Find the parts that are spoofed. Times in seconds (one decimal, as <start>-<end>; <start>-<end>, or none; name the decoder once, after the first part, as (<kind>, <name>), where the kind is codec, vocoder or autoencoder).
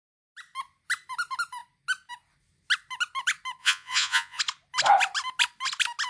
3.6-4.4 (vocoder, Vocos)